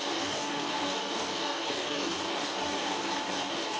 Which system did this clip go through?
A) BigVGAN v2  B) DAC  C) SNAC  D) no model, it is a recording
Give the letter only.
B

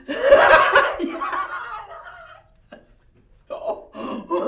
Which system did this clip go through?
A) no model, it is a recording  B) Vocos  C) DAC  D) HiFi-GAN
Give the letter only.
A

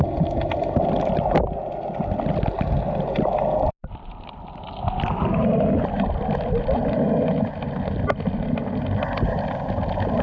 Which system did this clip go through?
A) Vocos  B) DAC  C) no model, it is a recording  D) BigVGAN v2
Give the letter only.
C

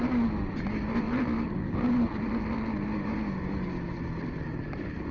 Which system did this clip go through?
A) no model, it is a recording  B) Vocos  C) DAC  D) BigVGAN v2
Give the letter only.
A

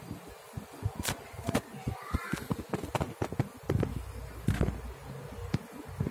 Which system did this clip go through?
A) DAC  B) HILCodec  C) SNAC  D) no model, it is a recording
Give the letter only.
D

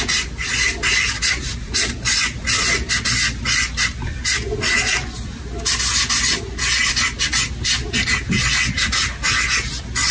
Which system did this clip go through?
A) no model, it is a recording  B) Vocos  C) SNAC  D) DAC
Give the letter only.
A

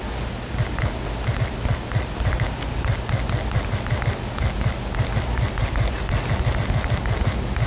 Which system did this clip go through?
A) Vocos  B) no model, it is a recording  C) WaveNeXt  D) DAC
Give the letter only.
B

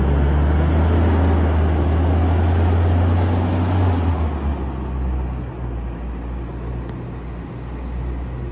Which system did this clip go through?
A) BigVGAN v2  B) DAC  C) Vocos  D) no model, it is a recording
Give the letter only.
D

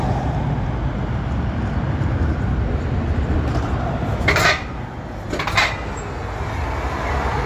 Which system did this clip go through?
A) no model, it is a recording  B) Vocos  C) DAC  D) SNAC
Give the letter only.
A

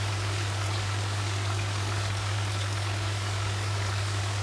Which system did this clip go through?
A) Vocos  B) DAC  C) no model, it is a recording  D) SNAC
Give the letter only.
B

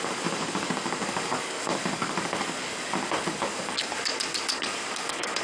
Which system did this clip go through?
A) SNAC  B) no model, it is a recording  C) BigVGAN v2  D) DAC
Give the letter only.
D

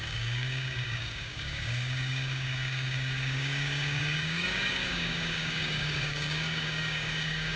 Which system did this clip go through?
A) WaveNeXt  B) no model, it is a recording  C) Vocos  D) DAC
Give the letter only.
D